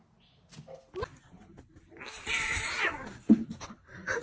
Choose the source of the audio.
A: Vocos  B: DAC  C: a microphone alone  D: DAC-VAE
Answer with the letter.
C